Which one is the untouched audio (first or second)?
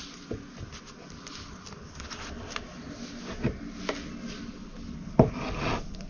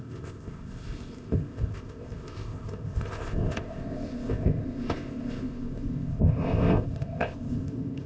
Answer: first